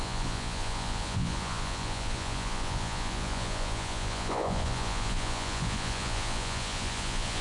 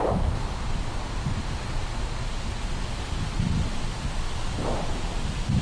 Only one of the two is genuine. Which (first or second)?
second